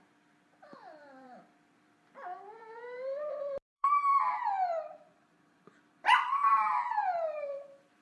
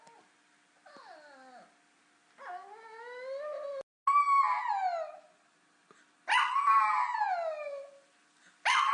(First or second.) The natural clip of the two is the second